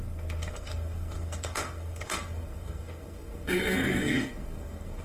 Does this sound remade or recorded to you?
remade